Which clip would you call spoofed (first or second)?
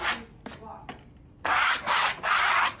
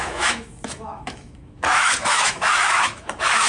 second